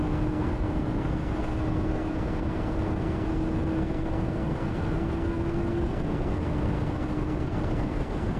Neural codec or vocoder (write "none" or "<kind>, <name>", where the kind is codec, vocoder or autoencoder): codec, SNAC